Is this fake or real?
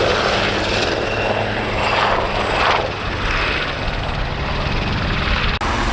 real